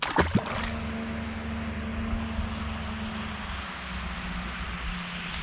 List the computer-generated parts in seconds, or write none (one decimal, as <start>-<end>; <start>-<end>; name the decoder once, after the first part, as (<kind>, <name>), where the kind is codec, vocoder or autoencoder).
none